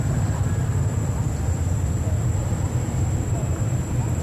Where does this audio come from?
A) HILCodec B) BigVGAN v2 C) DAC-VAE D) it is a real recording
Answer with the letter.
D